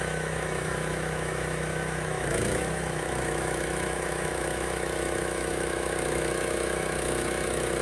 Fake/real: fake